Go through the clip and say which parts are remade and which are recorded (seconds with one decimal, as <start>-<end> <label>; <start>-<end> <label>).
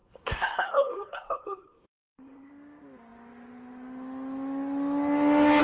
0.0-2.5 remade; 2.5-5.6 recorded